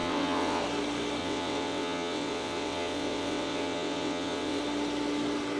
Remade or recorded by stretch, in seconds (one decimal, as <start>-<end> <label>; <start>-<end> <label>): 0.0-0.6 remade; 0.6-1.2 recorded; 1.2-4.6 remade; 4.6-5.6 recorded